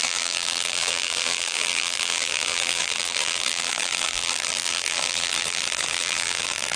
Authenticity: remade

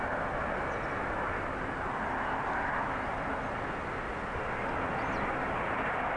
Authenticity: recorded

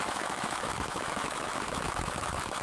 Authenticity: remade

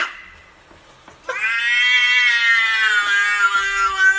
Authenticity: recorded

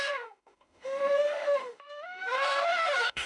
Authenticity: remade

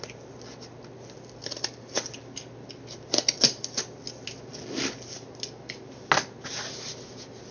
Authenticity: recorded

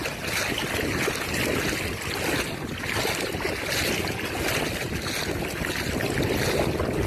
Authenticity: recorded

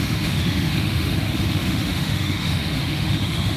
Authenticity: remade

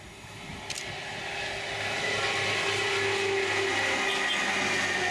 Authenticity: recorded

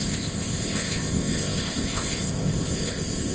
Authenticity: remade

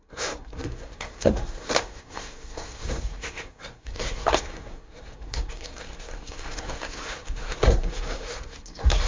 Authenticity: remade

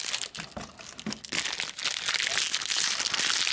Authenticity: recorded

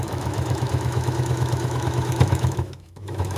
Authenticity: remade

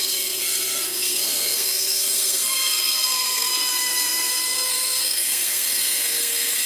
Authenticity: remade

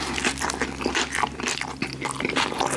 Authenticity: recorded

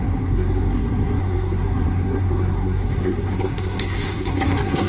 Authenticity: remade